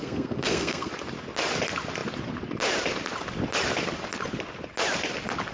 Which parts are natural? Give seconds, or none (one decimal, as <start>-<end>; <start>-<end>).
0.9-5.5

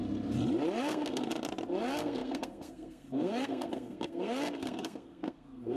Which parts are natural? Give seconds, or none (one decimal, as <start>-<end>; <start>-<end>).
0.0-0.8; 1.3-1.8

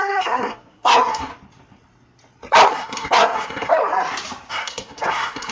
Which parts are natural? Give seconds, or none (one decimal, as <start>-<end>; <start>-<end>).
1.3-2.7; 3.8-4.5

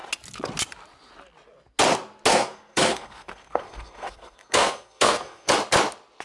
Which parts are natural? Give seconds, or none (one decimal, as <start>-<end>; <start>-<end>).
0.0-2.3; 5.5-6.2